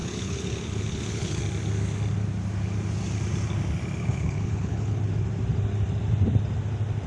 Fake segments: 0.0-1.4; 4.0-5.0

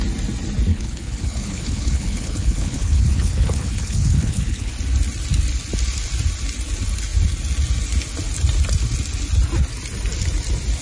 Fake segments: 0.7-4.7

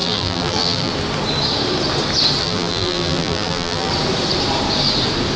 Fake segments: 0.0-0.9; 2.4-3.9

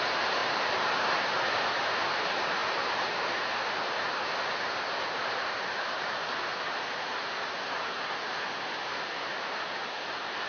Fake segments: 0.4-0.9; 2.6-4.5; 5.2-6.3

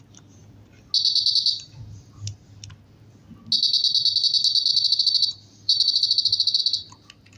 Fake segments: 4.7-6.6

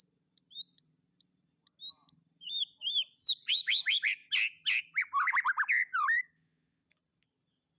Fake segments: 0.0-1.6; 2.2-4.2; 4.8-7.8